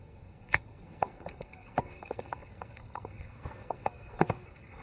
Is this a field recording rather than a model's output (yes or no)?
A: no